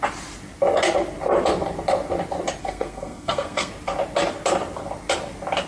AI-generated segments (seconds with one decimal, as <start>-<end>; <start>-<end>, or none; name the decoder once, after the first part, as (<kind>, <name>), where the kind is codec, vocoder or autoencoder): 2.6-3.7 (codec, SNAC)